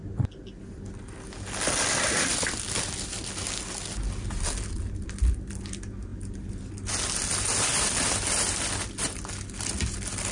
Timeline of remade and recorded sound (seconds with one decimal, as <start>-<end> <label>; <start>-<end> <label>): 0.0-10.3 recorded